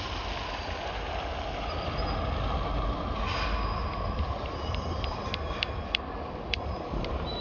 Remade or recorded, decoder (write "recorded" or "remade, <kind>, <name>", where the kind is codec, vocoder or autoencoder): recorded